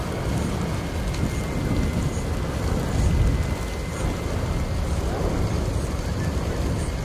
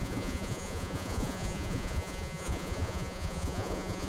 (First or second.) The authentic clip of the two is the first